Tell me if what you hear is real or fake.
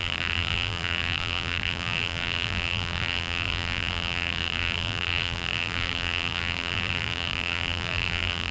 fake